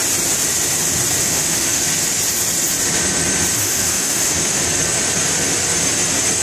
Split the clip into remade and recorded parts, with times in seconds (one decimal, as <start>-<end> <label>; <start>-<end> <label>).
0.0-1.2 recorded; 1.2-1.8 remade; 1.8-3.6 recorded; 3.6-4.6 remade; 4.6-6.4 recorded